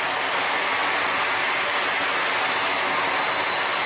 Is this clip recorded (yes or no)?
yes